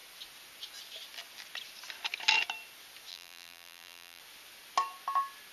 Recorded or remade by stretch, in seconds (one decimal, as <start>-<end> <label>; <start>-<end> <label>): 0.0-3.1 recorded; 3.1-4.2 remade; 4.2-5.5 recorded